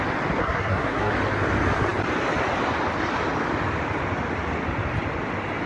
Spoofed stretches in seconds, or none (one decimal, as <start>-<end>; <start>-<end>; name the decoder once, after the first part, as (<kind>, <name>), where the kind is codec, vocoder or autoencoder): 0.4-1.1 (codec, SNAC)